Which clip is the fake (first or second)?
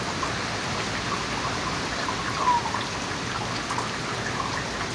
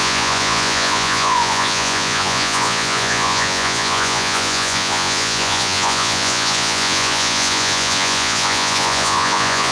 second